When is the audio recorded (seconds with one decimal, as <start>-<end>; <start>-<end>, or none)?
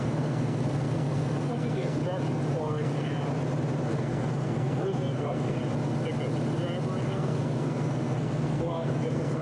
2.0-2.6; 3.1-3.9; 5.6-7.0